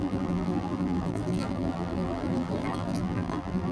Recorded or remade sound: remade